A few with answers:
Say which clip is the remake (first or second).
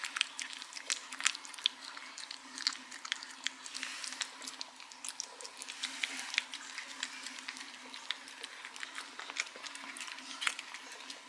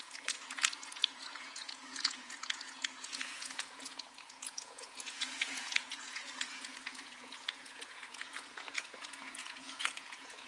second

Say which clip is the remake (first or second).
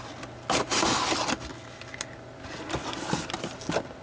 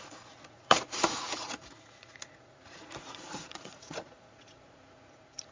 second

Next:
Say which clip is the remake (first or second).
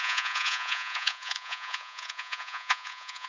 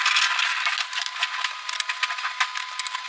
first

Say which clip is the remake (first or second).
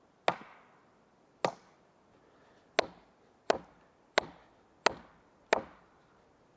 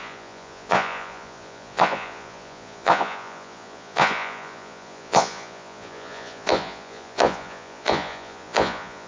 second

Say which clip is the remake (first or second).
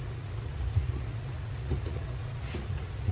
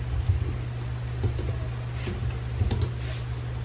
first